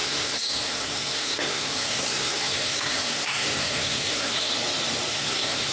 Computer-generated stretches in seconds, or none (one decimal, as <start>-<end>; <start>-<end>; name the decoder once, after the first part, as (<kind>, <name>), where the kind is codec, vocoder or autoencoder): 0.0-4.5 (codec, SNAC); 5.1-5.7